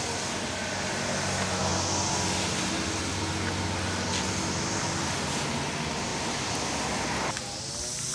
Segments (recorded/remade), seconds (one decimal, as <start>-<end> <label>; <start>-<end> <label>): 0.0-6.1 recorded; 6.1-6.7 remade; 6.7-8.1 recorded